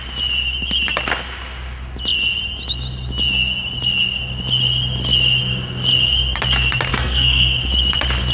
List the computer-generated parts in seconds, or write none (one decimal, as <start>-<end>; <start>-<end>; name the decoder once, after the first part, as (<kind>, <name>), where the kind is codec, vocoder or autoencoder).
6.9-7.6 (codec, SNAC)